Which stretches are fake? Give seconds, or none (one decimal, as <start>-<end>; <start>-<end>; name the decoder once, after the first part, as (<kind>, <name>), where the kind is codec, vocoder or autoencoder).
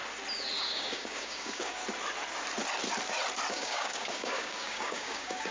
0.6-1.8 (codec, DAC); 3.5-5.5